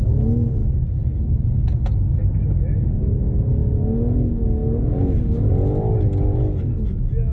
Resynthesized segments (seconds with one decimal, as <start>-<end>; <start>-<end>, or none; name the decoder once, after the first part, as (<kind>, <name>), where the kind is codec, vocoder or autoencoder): none